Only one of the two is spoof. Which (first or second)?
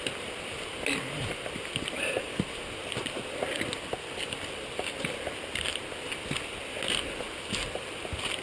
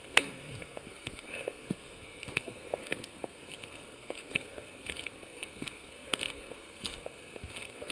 second